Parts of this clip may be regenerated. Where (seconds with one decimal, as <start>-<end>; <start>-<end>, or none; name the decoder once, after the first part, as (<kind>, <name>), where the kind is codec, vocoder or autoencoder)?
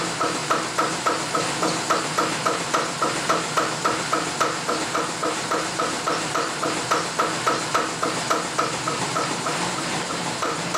0.0-0.4 (vocoder, BigVGAN v2); 4.7-6.8; 9.0-10.8